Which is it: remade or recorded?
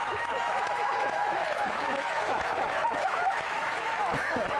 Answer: remade